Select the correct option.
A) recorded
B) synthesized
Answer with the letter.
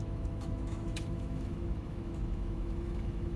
B